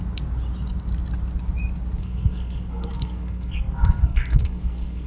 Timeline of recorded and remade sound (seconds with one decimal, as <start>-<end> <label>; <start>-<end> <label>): 0.0-2.0 recorded; 2.0-5.1 remade